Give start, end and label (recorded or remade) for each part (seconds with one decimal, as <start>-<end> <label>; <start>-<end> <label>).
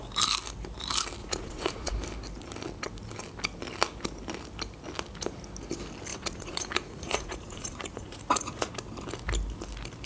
0.0-1.2 recorded; 1.2-1.9 remade; 1.9-6.1 recorded; 6.1-8.7 remade; 8.7-10.1 recorded